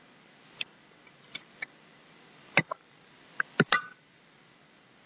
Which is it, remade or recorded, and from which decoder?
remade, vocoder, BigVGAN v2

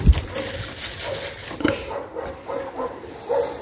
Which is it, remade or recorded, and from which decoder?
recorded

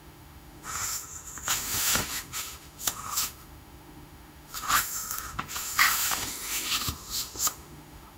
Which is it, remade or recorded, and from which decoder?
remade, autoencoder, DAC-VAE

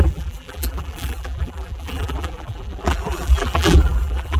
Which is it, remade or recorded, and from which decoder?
remade, vocoder, BigVGAN v2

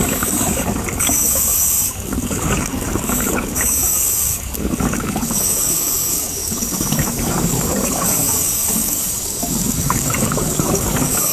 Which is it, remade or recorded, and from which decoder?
remade, codec, DAC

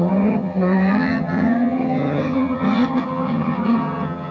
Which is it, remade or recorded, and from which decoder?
remade, vocoder, HiFi-GAN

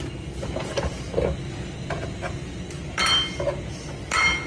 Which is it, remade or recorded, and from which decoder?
recorded